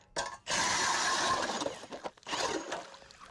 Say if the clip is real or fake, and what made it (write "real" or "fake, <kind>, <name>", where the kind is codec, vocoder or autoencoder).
real